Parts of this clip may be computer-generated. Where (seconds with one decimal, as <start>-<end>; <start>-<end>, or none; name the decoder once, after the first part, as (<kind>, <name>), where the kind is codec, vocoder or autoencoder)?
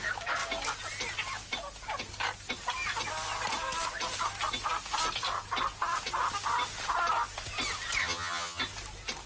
8.0-8.6 (vocoder, HiFi-GAN)